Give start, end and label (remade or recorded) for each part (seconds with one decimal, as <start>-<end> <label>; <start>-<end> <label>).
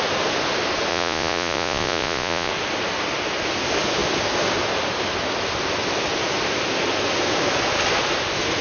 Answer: 0.0-0.9 recorded; 0.9-2.5 remade; 2.5-8.6 recorded